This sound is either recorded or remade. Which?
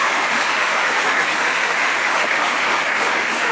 remade